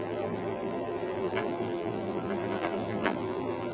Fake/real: fake